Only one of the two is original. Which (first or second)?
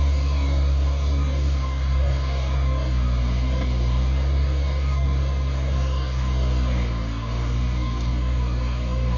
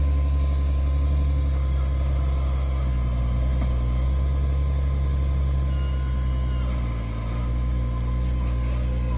second